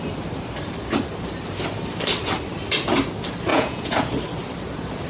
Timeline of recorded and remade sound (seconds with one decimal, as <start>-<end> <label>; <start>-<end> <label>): 0.0-3.5 recorded; 3.5-4.1 remade; 4.1-5.1 recorded